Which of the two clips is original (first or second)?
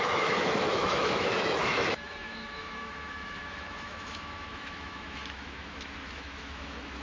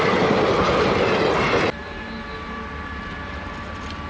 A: second